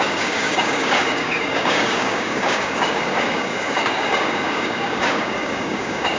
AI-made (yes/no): yes